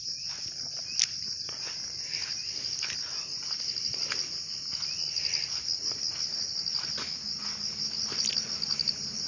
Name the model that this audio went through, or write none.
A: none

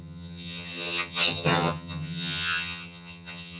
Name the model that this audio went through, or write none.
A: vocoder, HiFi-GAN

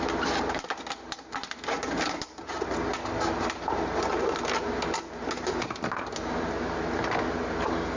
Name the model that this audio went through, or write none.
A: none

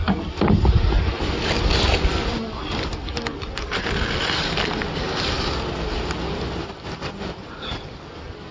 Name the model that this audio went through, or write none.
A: none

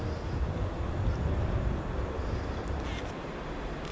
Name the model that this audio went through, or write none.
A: none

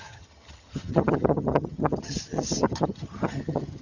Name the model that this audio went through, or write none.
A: vocoder, HiFi-GAN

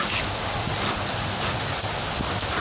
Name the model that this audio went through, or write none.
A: none